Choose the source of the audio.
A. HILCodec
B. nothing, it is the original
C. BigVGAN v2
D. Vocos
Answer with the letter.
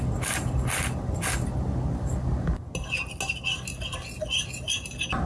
B